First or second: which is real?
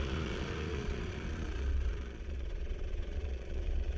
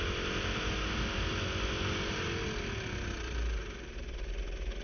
second